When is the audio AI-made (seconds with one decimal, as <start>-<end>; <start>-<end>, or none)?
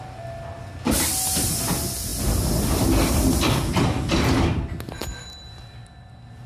none